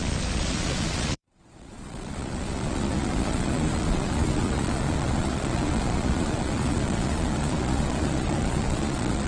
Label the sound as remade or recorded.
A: remade